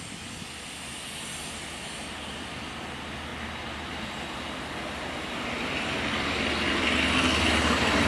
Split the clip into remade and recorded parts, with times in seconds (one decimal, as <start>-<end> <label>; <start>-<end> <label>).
0.0-3.3 recorded; 3.3-3.9 remade; 3.9-8.1 recorded